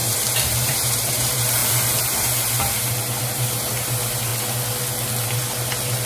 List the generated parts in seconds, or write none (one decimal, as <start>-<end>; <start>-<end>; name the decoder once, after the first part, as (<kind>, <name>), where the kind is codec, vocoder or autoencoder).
0.0-4.3 (vocoder, BigVGAN v2)